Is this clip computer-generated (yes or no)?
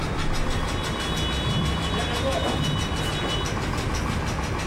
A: no